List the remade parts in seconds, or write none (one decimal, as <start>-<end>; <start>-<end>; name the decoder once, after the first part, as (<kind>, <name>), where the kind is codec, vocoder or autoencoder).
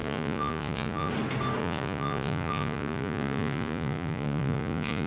0.0-1.1 (vocoder, Vocos); 1.6-5.1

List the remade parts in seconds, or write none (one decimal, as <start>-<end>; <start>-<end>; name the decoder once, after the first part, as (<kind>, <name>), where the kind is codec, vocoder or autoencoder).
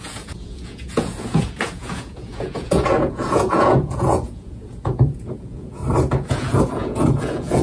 0.0-5.8 (vocoder, Vocos); 6.3-7.6